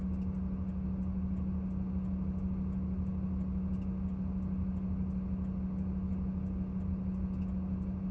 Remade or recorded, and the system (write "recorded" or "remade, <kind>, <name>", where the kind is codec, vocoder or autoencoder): recorded